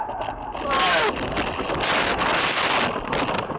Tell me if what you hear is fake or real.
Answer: real